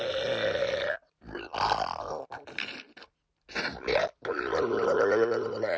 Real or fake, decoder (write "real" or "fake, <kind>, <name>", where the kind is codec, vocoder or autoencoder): real